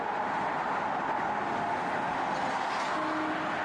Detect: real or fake real